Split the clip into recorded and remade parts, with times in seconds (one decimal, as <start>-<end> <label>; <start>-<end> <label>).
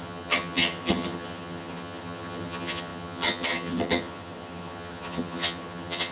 0.0-6.1 remade